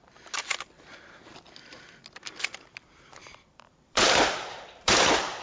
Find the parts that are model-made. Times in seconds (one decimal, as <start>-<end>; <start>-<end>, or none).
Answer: 3.2-5.4